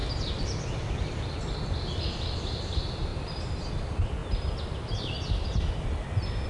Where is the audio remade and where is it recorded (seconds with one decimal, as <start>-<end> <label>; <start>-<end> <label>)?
0.0-6.5 recorded